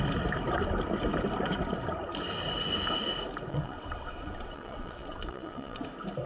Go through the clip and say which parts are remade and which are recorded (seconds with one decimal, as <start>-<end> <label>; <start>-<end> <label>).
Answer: 0.0-3.5 recorded; 3.5-5.8 remade; 5.8-6.3 recorded